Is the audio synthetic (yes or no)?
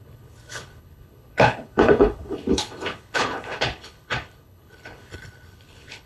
yes